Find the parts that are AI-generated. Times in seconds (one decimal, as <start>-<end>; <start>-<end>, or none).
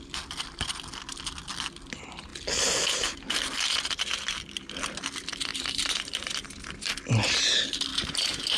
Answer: 5.5-6.9; 7.9-8.6